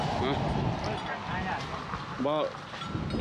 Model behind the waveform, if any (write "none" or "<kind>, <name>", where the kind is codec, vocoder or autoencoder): none